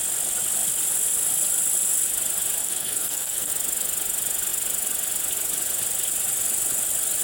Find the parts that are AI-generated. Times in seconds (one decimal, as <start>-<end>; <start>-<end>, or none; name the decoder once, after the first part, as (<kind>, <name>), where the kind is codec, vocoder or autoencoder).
2.6-3.5 (codec, SNAC)

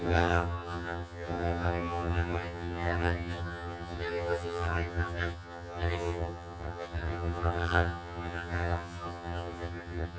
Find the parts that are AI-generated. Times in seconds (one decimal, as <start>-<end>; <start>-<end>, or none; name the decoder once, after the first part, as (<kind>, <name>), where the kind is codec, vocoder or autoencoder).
0.0-10.2 (vocoder, HiFi-GAN)